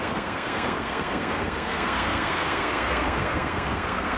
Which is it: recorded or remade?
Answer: remade